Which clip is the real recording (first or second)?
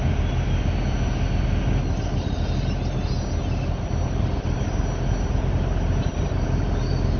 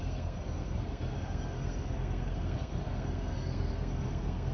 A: first